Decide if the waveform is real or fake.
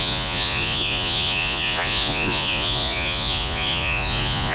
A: fake